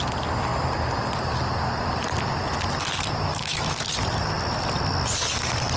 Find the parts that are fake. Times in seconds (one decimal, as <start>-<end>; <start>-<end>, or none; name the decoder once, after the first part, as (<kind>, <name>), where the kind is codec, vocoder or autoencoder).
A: 3.3-3.9 (autoencoder, DAC-VAE)